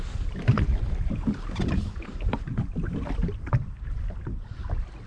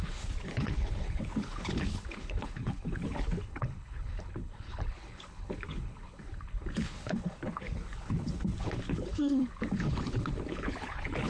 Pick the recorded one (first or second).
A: first